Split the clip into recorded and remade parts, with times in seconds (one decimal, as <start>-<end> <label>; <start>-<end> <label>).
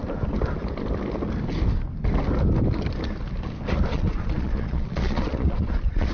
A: 0.0-3.9 recorded; 3.9-6.1 remade